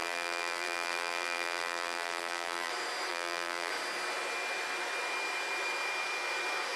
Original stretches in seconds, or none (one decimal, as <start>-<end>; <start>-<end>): 2.7-3.1; 3.7-6.8